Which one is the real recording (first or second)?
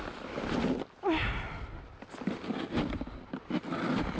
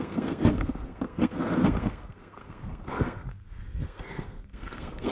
first